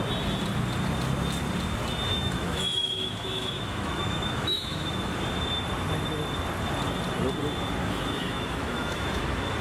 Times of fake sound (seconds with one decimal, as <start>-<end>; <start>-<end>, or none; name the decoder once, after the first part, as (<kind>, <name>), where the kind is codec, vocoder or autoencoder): 2.1-5.1 (autoencoder, DAC-VAE); 7.8-9.2